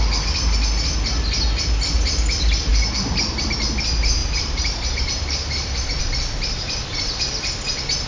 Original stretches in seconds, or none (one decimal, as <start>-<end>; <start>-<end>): 0.0-4.2; 6.0-8.1